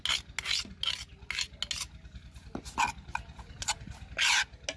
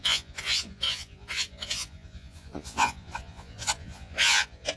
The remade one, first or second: second